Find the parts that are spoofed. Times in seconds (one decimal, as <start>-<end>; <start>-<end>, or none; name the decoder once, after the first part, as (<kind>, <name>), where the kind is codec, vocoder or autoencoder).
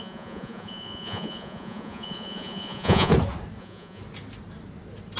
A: 0.0-3.1 (vocoder, Vocos); 3.6-4.0